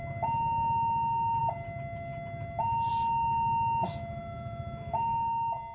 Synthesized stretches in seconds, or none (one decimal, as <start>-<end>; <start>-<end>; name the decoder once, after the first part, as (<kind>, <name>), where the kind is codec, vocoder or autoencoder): none